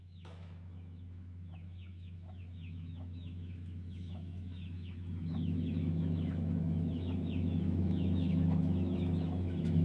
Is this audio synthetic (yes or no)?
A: yes